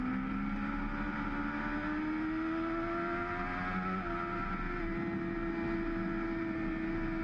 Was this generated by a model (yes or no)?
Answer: no